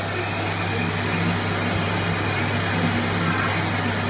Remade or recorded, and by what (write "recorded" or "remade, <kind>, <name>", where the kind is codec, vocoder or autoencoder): recorded